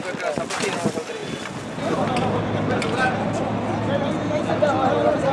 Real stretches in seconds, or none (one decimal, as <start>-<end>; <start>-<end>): 0.0-5.3